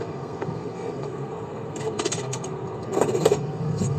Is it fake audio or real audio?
fake